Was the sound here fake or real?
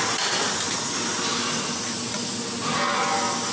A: real